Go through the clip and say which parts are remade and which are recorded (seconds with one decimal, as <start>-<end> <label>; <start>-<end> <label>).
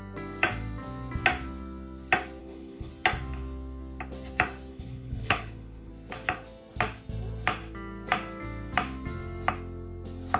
0.0-2.4 recorded; 2.4-2.9 remade; 2.9-4.7 recorded; 4.7-5.9 remade; 5.9-10.4 recorded